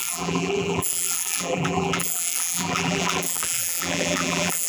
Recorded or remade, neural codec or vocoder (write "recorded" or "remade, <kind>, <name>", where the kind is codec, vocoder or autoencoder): remade, vocoder, BigVGAN v2